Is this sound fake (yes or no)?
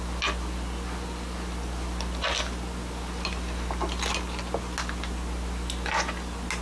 no